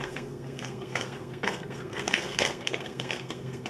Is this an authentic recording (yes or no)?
no